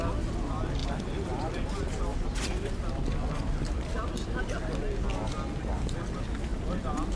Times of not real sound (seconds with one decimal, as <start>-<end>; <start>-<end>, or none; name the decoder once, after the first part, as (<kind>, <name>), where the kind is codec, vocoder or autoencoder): 0.8-1.7 (vocoder, BigVGAN v2); 2.1-4.4; 6.5-7.2